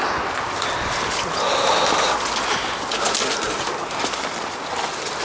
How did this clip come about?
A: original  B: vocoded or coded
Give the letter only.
A